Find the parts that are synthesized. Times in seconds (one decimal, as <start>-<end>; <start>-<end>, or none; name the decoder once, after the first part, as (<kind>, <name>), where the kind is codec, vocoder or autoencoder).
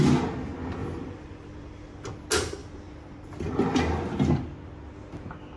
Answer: 0.8-2.1 (vocoder, BigVGAN v2); 2.6-4.0